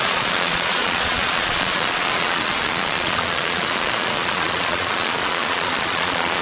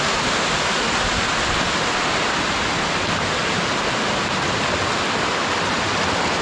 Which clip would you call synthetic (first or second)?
first